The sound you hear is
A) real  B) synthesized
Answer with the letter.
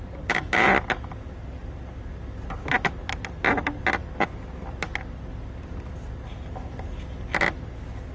A